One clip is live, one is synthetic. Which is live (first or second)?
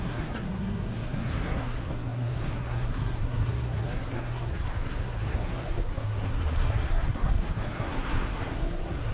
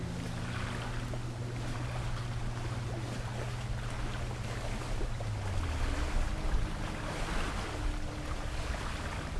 second